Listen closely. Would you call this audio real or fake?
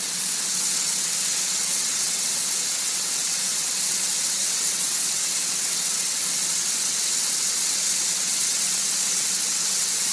fake